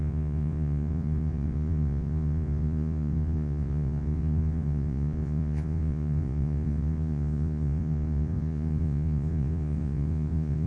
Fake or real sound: fake